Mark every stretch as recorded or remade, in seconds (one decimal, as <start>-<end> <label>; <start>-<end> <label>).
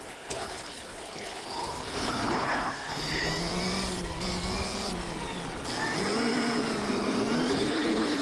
0.0-3.3 remade; 3.3-7.5 recorded; 7.5-8.2 remade